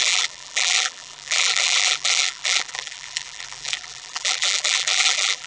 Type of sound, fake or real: fake